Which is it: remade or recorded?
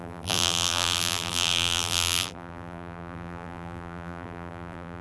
remade